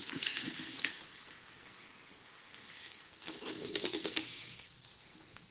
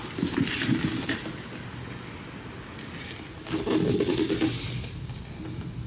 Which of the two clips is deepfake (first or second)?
first